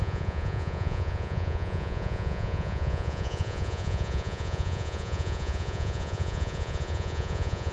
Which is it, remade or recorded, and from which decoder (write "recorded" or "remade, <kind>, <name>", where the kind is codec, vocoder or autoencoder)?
remade, vocoder, Vocos